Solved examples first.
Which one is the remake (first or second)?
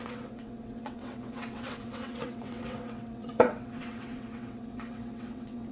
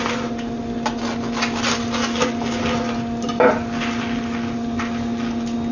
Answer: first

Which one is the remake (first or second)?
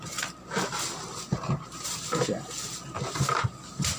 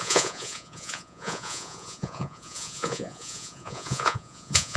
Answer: second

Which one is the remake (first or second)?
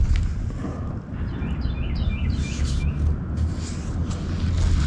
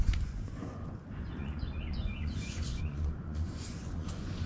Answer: second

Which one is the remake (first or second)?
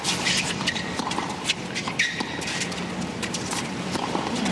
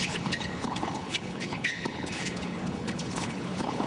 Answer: second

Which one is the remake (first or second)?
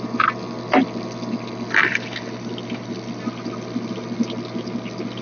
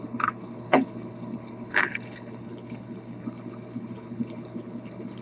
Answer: second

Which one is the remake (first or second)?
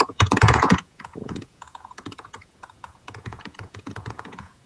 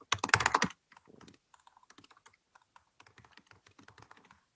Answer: first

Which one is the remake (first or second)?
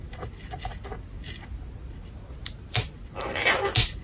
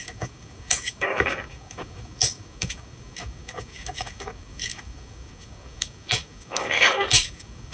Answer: second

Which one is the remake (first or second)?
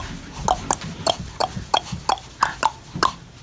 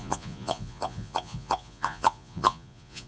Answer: second